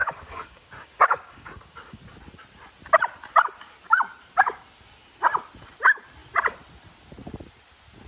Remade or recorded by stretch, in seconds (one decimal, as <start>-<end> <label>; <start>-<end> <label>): 0.0-2.0 remade; 2.0-8.1 recorded